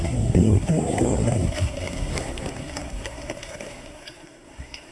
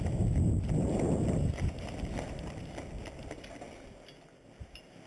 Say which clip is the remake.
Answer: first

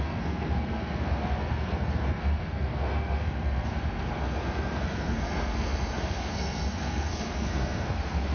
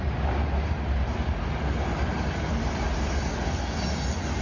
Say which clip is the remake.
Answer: first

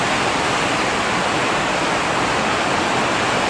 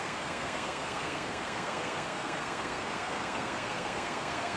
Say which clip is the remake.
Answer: second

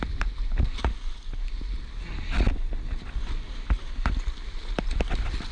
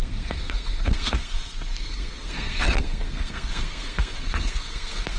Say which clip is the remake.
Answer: second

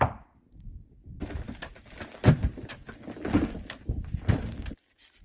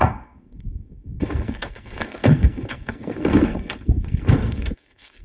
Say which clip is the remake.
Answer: second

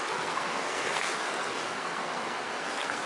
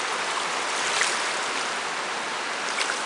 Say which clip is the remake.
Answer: first